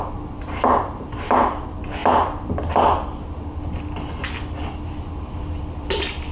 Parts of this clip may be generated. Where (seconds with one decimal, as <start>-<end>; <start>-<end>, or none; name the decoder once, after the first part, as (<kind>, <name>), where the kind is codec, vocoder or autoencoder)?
none